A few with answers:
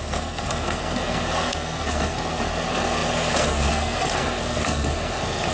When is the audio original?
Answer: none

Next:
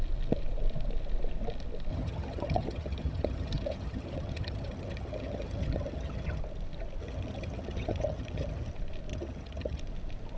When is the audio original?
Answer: 0.0-1.9; 6.4-7.0; 8.7-9.1; 9.8-10.4

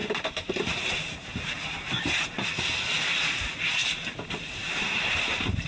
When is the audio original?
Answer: 2.5-4.6

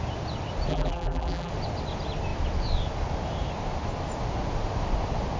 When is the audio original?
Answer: 0.0-0.7; 1.5-5.4

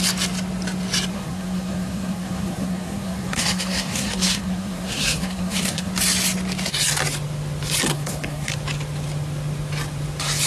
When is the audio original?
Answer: 0.0-1.1; 5.9-7.9; 8.5-10.5

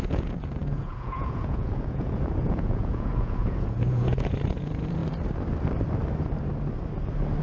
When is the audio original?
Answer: 5.0-7.4